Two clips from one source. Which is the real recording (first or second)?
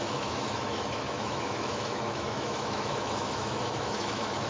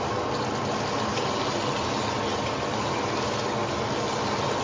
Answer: second